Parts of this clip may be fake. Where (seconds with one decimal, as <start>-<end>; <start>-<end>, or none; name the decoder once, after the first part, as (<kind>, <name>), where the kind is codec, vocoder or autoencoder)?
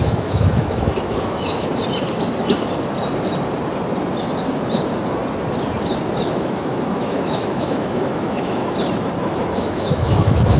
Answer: 0.0-1.7 (autoencoder, DAC-VAE); 6.3-8.6; 9.2-10.6